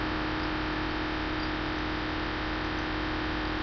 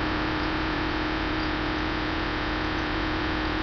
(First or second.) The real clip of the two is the first